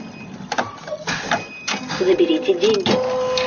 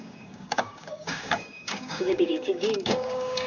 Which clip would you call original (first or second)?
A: first